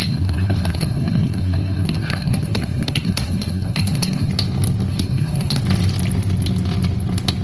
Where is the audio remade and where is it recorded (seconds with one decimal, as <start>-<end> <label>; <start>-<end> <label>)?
0.0-4.3 remade; 4.3-4.9 recorded; 4.9-5.6 remade; 5.6-7.4 recorded